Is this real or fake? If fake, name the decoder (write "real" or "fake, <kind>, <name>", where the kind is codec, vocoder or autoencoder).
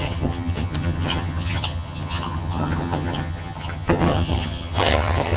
fake, vocoder, HiFi-GAN